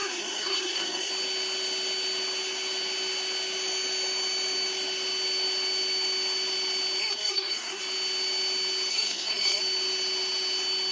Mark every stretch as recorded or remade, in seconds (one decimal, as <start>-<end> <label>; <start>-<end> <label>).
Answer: 0.0-1.1 remade; 1.1-7.0 recorded; 7.0-7.8 remade; 7.8-8.9 recorded; 8.9-9.6 remade; 9.6-10.9 recorded

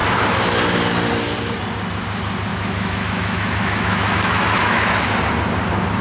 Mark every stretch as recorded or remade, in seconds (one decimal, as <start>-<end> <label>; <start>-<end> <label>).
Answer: 0.0-2.5 recorded; 2.5-5.0 remade; 5.0-6.0 recorded